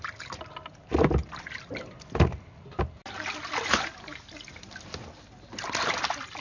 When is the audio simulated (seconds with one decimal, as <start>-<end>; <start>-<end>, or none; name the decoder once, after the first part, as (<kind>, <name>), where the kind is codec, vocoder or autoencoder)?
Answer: none